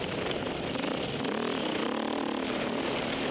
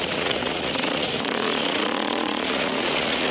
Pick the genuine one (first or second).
first